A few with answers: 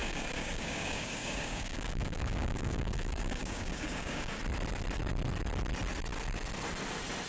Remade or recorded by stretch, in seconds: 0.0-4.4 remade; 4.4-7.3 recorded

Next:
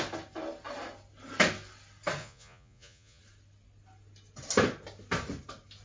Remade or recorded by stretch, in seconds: 0.0-2.2 recorded; 2.2-3.2 remade; 3.2-5.8 recorded

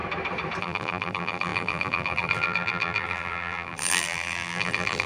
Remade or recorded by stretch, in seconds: 0.0-0.6 recorded; 0.6-5.1 remade

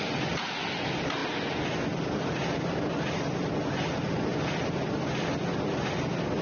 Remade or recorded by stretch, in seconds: 0.0-6.4 recorded